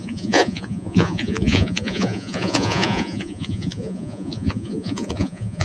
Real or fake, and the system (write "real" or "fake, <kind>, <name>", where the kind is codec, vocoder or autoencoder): fake, vocoder, Vocos